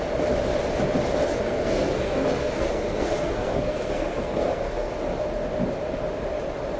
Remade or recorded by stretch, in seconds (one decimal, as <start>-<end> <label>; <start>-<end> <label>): 0.0-1.3 recorded; 1.3-4.9 remade; 4.9-6.8 recorded